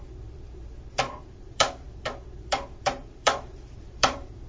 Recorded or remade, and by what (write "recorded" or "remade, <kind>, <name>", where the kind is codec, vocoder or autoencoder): remade, vocoder, BigVGAN v2